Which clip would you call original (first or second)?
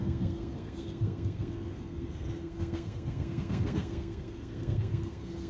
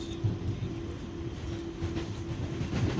second